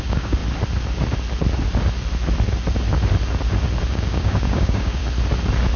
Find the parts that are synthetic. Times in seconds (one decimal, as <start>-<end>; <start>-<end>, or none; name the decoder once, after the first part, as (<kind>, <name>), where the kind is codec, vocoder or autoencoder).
0.0-0.4 (codec, DAC); 3.9-5.0